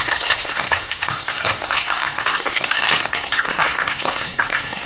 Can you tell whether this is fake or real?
fake